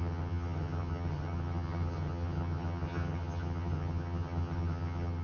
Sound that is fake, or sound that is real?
fake